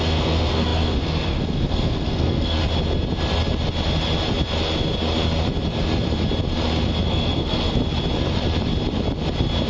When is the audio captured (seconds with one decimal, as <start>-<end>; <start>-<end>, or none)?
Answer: 2.6-7.1; 7.8-9.7